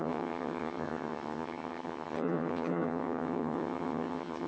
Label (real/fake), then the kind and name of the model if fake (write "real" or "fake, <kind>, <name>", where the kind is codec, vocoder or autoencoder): fake, vocoder, HiFi-GAN